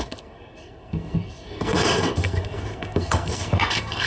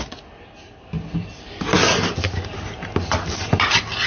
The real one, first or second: second